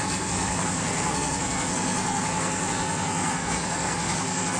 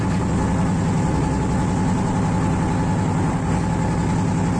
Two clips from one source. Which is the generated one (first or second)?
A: first